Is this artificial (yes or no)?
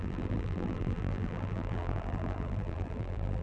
yes